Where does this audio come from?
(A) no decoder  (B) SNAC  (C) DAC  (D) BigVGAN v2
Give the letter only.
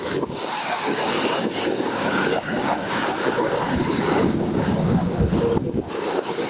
C